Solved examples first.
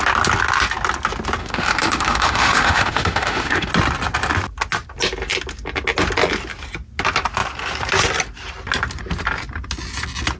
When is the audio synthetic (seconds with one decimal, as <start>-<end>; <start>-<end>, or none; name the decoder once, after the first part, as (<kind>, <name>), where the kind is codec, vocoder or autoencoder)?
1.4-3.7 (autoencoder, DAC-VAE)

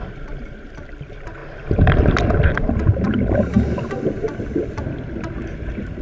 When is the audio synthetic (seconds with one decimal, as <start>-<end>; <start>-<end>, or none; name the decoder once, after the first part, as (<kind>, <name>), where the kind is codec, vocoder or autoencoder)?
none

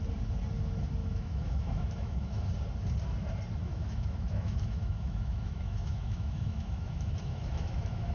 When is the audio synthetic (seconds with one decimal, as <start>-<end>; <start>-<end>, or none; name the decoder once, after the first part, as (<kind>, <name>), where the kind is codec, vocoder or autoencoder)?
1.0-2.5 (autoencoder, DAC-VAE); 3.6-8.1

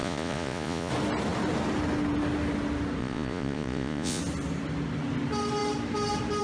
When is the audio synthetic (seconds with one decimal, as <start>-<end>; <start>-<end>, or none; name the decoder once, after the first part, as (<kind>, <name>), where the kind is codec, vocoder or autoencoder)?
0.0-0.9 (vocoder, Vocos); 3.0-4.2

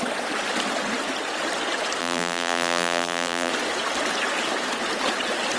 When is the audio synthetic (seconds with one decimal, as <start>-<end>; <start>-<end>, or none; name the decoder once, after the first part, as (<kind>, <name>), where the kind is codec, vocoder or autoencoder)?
2.0-3.5 (vocoder, BigVGAN v2)